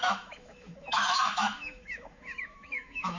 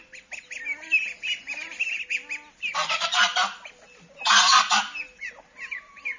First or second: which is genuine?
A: second